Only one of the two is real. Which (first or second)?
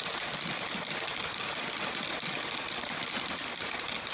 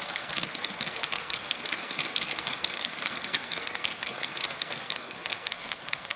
first